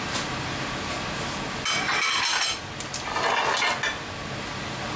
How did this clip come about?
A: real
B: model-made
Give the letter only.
A